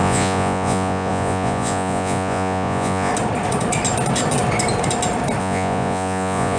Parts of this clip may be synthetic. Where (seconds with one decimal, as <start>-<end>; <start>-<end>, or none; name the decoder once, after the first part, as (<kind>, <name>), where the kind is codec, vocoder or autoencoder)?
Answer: 0.0-3.1 (vocoder, Vocos); 5.4-6.6